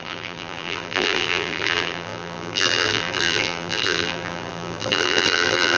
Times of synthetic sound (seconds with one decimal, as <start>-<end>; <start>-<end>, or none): 0.0-5.8